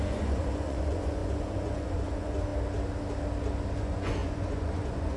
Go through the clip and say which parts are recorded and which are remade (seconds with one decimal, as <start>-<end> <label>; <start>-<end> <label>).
0.0-2.5 remade; 2.5-3.8 recorded; 3.8-5.2 remade